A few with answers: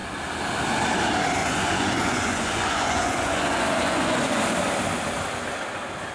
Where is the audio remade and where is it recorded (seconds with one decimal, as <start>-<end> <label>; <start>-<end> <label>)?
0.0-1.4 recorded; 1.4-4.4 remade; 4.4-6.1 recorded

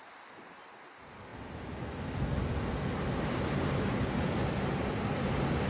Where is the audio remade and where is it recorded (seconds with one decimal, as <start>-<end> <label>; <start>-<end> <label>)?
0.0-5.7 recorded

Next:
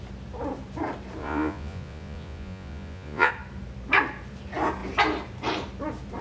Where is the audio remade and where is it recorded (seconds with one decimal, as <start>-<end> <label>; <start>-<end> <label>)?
0.0-1.2 recorded; 1.2-3.3 remade; 3.3-6.2 recorded

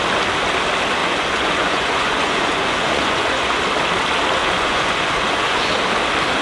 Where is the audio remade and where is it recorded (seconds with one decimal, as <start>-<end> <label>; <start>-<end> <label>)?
0.0-1.0 recorded; 1.0-3.6 remade; 3.6-4.4 recorded; 4.4-5.7 remade; 5.7-6.4 recorded

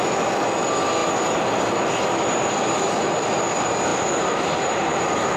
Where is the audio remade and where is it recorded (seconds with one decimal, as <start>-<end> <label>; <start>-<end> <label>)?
0.0-5.4 recorded

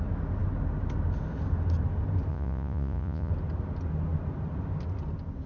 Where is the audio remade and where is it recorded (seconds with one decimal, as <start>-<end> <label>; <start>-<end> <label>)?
0.0-2.3 recorded; 2.3-3.3 remade; 3.3-5.5 recorded